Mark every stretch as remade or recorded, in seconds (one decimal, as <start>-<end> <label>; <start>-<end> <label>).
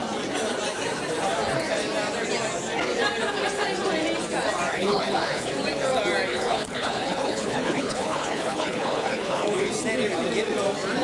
0.0-4.7 recorded; 4.7-5.5 remade; 5.5-6.3 recorded; 6.3-9.7 remade; 9.7-11.0 recorded